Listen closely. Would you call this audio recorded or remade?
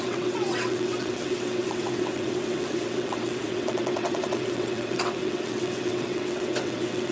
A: remade